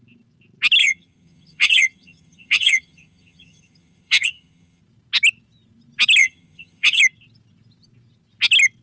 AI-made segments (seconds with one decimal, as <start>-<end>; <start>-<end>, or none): 0.8-4.8; 6.2-7.0